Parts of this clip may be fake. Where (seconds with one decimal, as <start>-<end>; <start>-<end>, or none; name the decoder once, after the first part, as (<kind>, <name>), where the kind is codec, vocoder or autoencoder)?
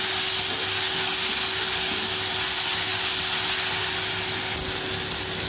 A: none